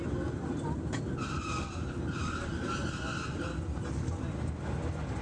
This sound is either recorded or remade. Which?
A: recorded